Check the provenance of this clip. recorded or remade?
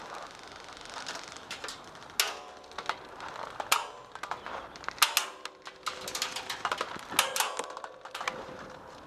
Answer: recorded